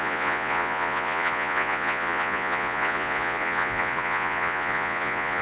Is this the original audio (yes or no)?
no